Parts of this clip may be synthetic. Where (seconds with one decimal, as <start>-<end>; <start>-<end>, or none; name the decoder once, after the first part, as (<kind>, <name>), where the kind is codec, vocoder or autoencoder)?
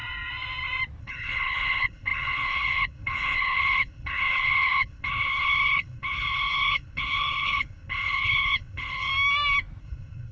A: 1.0-9.1 (codec, HILCodec); 9.8-10.3